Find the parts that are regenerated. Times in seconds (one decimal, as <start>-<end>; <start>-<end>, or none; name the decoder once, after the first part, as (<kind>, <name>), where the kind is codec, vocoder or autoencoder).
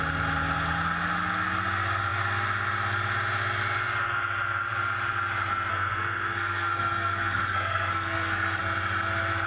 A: 5.7-8.6 (codec, SNAC)